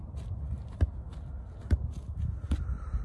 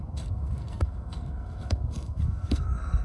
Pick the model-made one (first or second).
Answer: second